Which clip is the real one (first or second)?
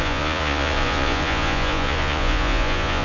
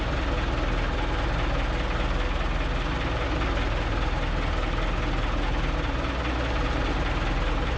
second